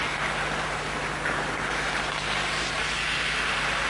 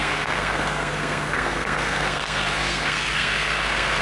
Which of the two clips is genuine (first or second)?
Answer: first